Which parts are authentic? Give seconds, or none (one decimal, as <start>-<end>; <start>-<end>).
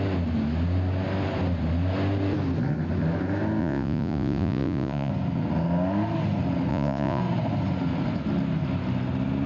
0.0-3.6; 5.1-6.7; 7.2-9.5